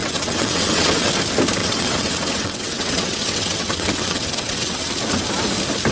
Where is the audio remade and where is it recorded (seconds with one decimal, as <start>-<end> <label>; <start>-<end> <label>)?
0.0-1.1 remade; 1.1-1.6 recorded; 1.6-4.9 remade; 4.9-5.9 recorded